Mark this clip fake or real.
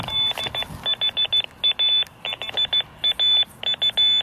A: real